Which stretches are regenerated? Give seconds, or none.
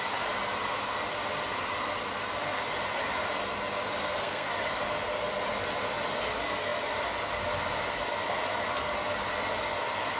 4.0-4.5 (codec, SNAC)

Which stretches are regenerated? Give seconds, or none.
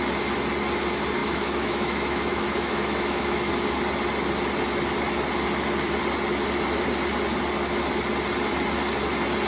1.2-3.5 (autoencoder, DAC-VAE)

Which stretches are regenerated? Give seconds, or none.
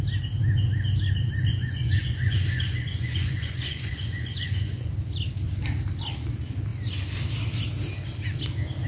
1.5-4.9 (vocoder, Vocos)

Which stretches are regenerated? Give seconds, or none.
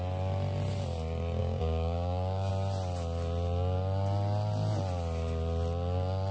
1.4-2.5 (codec, DAC)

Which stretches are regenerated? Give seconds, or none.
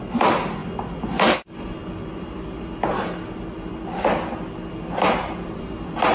none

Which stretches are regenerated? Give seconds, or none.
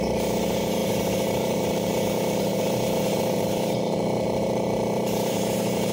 0.0-5.9 (vocoder, BigVGAN v2)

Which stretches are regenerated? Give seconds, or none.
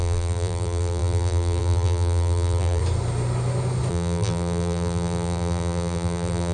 0.0-2.8 (vocoder, BigVGAN v2); 3.9-6.5